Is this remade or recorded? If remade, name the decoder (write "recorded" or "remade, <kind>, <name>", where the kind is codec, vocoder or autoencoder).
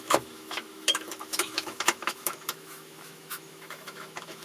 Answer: remade, autoencoder, DAC-VAE